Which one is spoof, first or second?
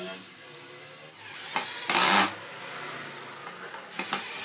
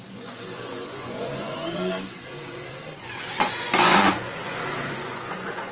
second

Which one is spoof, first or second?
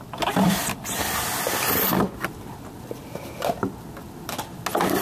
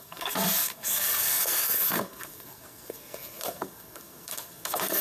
second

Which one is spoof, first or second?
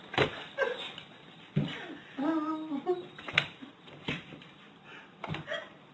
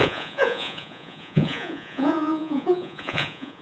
second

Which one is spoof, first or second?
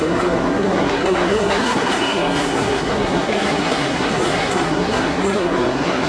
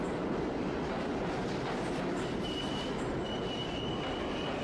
first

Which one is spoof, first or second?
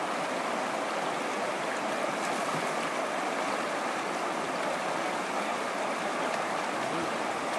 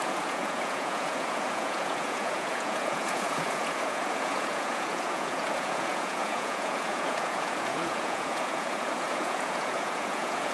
second